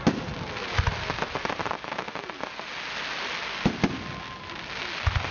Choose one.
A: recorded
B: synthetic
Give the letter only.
A